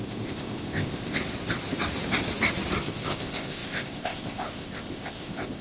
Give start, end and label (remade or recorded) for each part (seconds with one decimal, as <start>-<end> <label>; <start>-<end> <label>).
0.0-1.2 remade; 1.2-2.8 recorded; 2.8-5.6 remade